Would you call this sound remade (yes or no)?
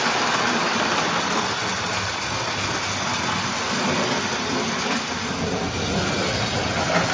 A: no